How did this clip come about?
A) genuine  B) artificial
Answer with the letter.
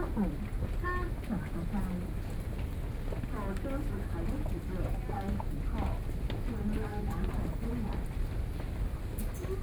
A